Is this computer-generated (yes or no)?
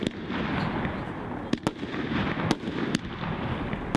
no